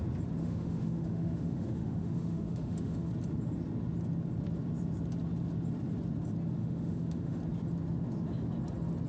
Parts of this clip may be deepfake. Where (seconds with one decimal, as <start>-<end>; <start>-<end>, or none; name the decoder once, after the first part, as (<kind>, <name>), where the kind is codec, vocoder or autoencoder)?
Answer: 0.4-3.1 (autoencoder, DAC-VAE); 6.6-7.4